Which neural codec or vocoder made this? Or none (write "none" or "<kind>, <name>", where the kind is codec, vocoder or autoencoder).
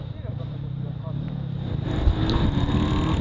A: vocoder, BigVGAN v2